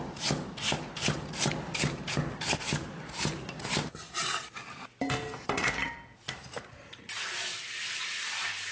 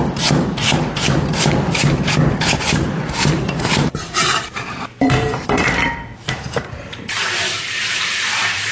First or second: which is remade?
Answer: second